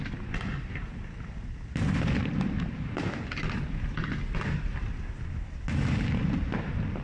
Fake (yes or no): no